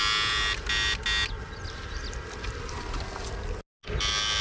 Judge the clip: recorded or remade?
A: recorded